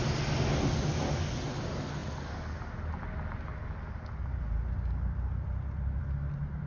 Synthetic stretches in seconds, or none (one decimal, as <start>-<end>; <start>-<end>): none